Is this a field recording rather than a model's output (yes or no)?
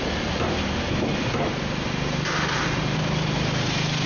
no